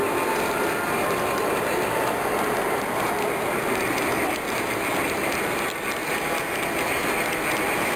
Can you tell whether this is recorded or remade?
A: recorded